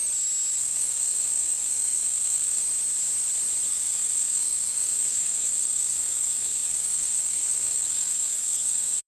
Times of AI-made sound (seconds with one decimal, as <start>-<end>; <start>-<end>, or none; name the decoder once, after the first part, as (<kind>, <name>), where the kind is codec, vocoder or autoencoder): 0.6-2.6 (codec, SNAC); 3.7-9.1